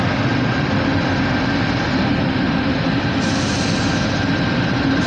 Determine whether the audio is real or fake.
real